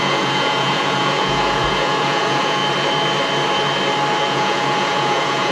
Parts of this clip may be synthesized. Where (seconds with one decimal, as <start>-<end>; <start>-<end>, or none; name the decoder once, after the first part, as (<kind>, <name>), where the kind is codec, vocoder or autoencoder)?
0.0-2.6 (vocoder, Vocos); 4.3-5.5